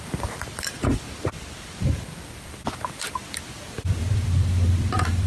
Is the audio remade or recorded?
remade